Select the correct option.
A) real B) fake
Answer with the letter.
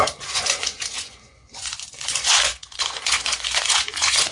B